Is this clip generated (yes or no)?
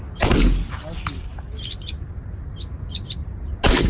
no